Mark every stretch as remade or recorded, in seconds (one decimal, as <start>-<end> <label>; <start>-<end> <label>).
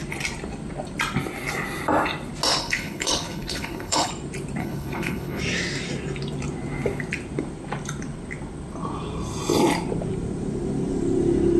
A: 0.0-2.6 recorded; 2.6-4.1 remade; 4.1-4.6 recorded; 4.6-5.4 remade; 5.4-11.6 recorded